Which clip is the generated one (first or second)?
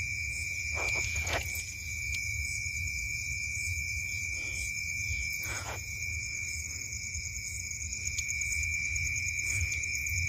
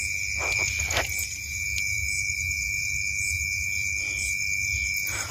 first